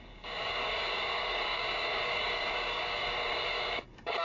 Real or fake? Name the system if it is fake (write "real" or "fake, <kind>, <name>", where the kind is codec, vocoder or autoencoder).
fake, codec, DAC